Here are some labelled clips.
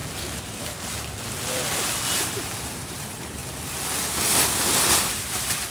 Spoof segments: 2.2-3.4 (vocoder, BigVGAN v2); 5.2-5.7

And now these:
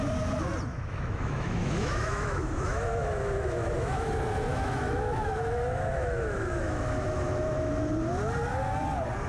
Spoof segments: 0.7-4.1 (autoencoder, DAC-VAE); 4.5-7.9

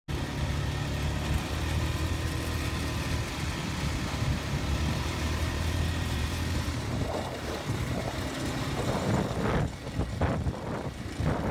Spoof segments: 4.3-9.1 (vocoder, BigVGAN v2)

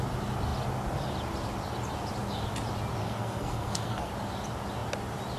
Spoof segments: 3.0-4.1 (codec, SNAC)

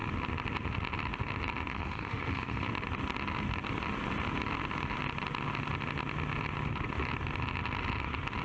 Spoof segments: 1.7-2.7 (autoencoder, DAC-VAE)

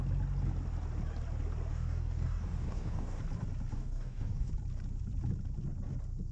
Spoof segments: 1.7-3.2 (codec, DAC); 3.7-4.5